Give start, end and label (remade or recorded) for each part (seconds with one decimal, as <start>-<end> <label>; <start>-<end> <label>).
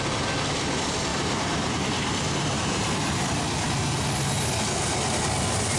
0.0-1.1 recorded; 1.1-3.7 remade; 3.7-5.8 recorded